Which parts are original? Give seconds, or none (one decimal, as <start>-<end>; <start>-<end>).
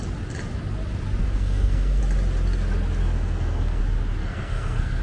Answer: 0.0-1.2; 2.0-3.0; 3.8-4.2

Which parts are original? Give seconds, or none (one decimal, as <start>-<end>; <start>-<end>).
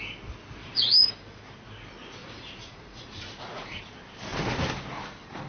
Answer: 0.0-0.6; 1.1-2.2; 3.8-5.5